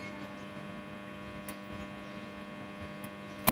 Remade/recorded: recorded